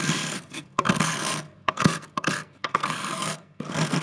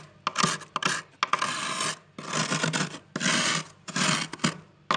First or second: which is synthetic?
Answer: first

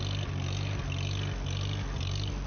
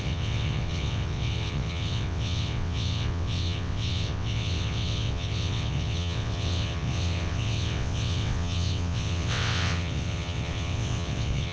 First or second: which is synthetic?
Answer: second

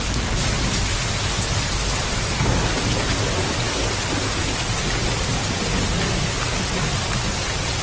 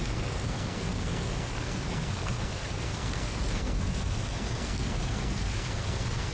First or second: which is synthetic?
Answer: second